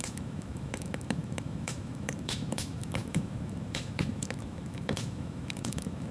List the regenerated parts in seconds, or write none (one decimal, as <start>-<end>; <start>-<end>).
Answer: 0.0-6.1